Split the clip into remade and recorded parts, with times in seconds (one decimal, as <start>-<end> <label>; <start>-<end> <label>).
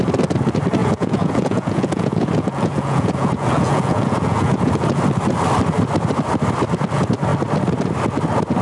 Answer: 0.0-0.8 recorded; 0.8-4.7 remade; 4.7-8.6 recorded